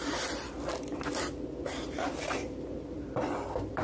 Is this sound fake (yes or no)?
no